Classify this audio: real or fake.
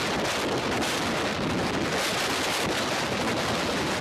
real